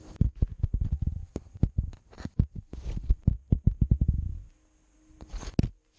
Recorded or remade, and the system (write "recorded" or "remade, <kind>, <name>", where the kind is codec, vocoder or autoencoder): recorded